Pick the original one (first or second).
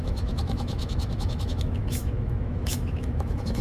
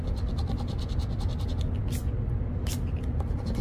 second